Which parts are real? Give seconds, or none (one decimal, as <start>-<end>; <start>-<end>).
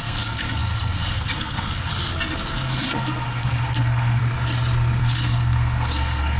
1.9-2.5; 4.2-5.0